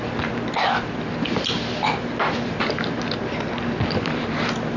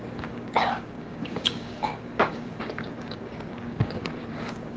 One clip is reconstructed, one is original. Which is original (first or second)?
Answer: first